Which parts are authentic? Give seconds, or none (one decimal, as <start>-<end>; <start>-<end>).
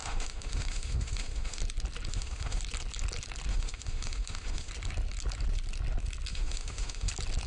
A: 1.6-2.1; 2.6-3.5; 4.7-6.3; 7.1-7.5